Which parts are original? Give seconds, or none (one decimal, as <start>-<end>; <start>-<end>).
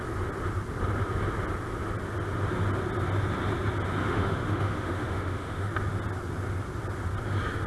0.0-4.0; 5.7-7.7